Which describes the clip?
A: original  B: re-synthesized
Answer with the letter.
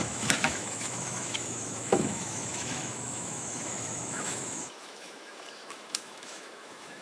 B